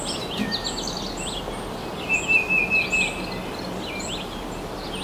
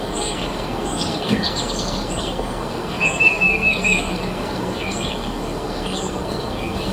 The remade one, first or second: second